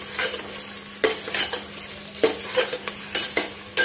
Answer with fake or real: real